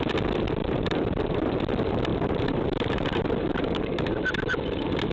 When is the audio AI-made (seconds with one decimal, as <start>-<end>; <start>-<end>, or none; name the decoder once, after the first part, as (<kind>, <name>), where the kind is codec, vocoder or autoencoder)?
0.6-1.4 (vocoder, BigVGAN v2); 2.1-4.5